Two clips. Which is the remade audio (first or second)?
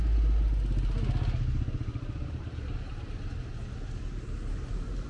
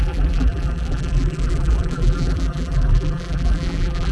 second